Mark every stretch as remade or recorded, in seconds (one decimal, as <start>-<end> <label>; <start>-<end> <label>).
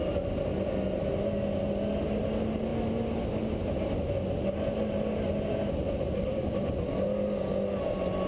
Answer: 0.0-8.3 recorded